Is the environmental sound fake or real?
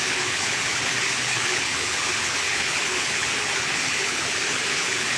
fake